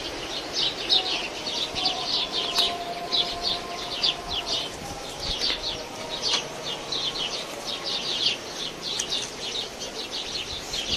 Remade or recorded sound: recorded